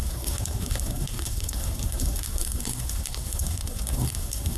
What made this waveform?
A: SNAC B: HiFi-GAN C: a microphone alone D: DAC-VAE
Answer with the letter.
A